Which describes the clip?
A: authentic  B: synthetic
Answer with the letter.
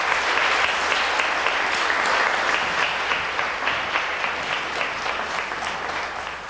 A